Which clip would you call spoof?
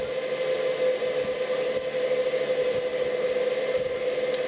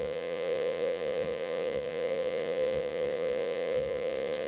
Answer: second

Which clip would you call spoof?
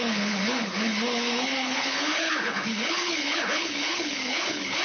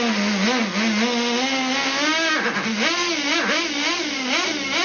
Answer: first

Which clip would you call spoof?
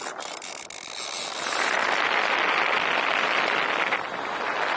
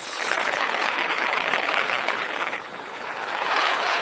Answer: second